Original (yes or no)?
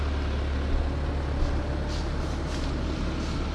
yes